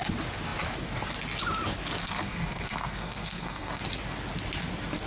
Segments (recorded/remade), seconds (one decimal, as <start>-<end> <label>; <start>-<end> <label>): 0.0-2.0 recorded; 2.0-3.8 remade; 3.8-5.1 recorded